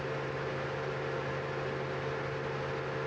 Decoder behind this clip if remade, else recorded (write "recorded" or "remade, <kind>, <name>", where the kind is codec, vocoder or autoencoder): recorded